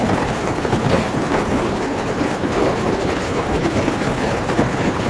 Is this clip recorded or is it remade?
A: remade